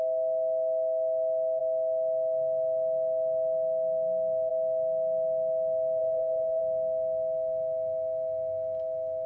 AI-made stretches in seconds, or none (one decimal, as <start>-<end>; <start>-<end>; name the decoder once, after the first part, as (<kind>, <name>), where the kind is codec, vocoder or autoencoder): 6.0-6.6 (codec, HILCodec)